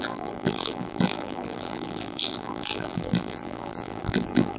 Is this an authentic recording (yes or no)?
no